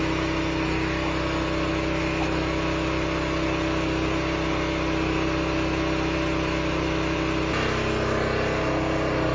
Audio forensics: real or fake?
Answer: real